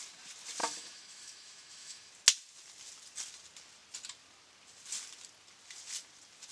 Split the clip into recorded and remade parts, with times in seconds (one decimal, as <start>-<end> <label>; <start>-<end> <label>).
0.0-0.6 recorded; 0.6-2.1 remade; 2.1-6.5 recorded